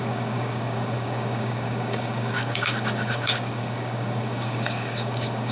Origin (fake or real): fake